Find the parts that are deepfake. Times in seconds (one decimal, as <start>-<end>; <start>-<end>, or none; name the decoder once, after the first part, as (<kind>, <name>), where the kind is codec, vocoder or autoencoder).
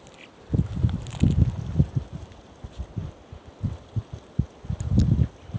none